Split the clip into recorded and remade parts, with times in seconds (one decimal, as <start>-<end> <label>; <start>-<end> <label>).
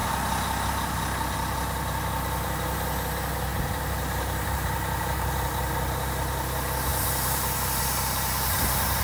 0.0-3.5 recorded; 3.5-5.3 remade; 5.3-9.0 recorded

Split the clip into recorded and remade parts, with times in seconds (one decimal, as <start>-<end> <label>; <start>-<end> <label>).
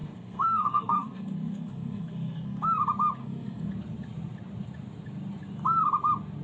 0.0-2.7 remade; 2.7-3.2 recorded; 3.2-3.7 remade; 3.7-6.4 recorded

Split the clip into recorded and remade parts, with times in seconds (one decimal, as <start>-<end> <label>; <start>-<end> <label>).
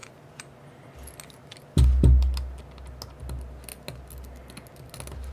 0.0-5.3 recorded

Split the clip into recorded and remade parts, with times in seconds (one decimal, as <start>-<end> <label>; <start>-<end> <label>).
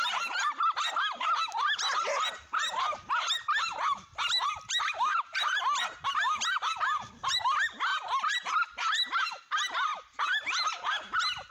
0.0-5.3 recorded; 5.3-5.8 remade; 5.8-7.9 recorded; 7.9-8.5 remade; 8.5-9.9 recorded; 9.9-10.7 remade; 10.7-11.5 recorded